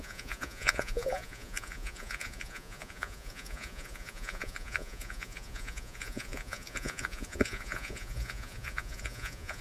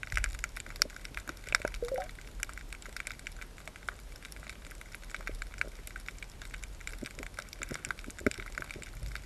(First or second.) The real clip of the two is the second